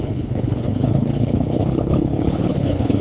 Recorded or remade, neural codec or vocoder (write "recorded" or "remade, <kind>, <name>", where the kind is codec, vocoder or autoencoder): remade, codec, HILCodec